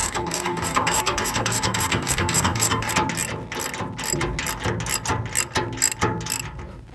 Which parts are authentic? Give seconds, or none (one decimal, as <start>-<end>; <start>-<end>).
2.9-6.9